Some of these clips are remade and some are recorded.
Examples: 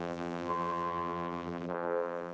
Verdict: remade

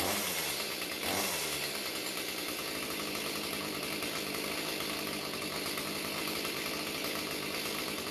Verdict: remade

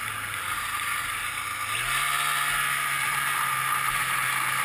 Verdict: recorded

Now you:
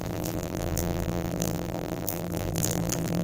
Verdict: remade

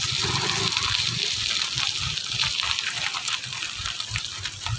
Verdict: recorded